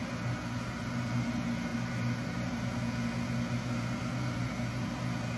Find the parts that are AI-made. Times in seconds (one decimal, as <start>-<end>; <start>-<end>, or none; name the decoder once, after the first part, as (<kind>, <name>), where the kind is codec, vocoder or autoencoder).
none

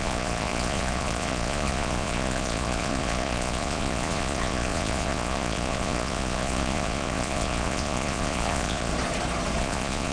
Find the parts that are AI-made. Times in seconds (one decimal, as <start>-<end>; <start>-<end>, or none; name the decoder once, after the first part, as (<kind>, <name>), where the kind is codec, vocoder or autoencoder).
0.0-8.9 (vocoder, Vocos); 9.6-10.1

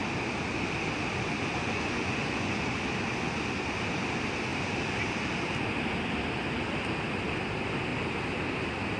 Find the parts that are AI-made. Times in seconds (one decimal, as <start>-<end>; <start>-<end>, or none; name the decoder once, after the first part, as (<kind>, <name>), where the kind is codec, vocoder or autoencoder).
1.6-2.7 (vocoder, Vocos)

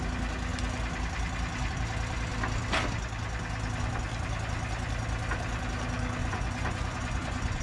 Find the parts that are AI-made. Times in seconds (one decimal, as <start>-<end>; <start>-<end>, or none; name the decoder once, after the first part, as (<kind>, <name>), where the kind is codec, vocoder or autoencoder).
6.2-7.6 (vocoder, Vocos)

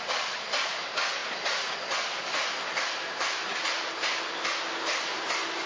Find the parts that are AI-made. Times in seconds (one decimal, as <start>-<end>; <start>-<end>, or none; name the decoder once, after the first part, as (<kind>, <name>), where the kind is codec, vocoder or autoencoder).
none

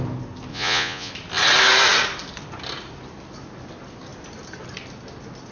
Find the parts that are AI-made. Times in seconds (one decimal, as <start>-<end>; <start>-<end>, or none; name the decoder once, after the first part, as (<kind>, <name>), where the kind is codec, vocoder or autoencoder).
0.5-1.1 (vocoder, Vocos)